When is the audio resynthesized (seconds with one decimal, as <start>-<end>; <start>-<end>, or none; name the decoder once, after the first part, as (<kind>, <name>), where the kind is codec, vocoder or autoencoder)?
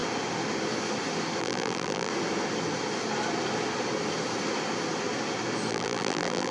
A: 1.4-2.1 (vocoder, BigVGAN v2); 5.7-6.5